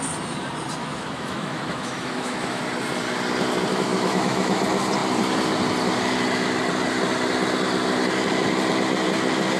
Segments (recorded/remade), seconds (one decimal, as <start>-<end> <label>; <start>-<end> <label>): 0.0-0.8 recorded; 0.8-2.6 remade; 2.6-3.7 recorded; 3.7-4.6 remade; 4.6-9.6 recorded